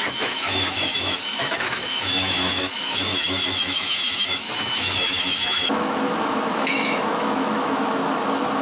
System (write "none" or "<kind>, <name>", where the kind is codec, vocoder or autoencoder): autoencoder, DAC-VAE